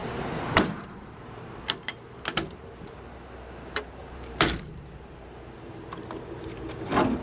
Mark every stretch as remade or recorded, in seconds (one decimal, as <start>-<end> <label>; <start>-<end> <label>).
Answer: 0.0-1.6 remade; 1.6-4.0 recorded; 4.0-6.7 remade; 6.7-7.2 recorded